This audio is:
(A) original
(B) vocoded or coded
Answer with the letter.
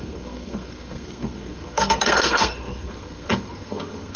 B